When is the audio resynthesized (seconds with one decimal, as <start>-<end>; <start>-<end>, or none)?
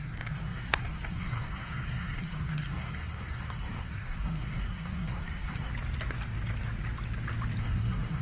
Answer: 0.0-5.7; 7.6-8.2